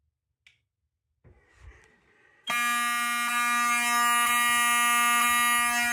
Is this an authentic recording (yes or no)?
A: yes